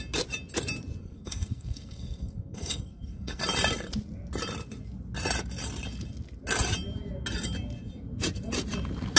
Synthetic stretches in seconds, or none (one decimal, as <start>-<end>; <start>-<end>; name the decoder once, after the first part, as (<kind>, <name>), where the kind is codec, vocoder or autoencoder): 1.0-3.4 (codec, SNAC)

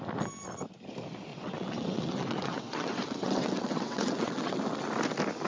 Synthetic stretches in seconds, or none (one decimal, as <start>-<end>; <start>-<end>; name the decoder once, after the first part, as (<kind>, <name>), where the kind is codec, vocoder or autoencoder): 1.3-4.6 (vocoder, WaveNeXt)